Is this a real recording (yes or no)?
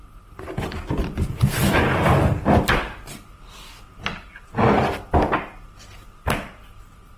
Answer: yes